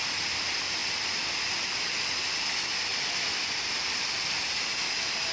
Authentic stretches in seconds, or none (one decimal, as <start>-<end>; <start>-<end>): 0.0-5.3